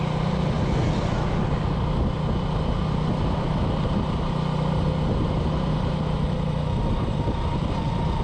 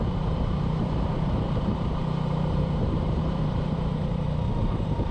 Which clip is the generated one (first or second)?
second